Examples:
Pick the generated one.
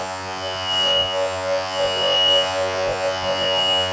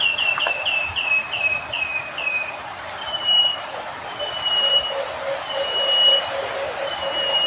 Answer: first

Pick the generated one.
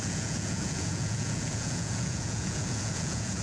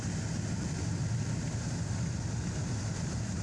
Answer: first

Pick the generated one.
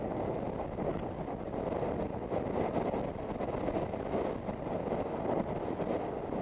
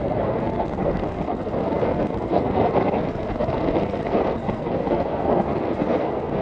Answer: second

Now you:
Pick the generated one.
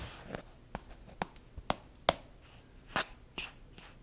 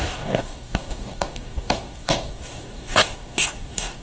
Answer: second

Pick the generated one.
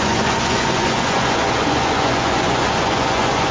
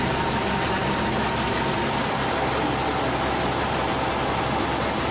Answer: first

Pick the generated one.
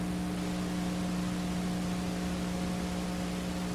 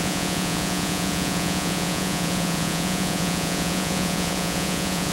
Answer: second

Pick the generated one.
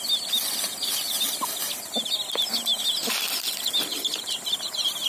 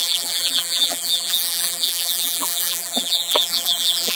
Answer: second